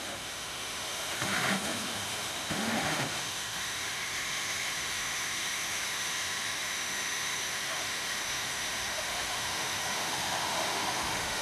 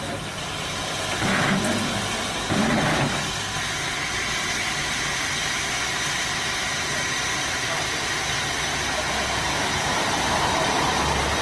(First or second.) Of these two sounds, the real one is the second